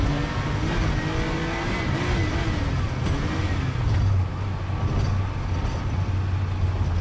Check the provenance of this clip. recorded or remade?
recorded